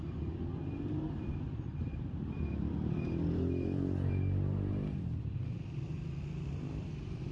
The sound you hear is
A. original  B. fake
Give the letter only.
B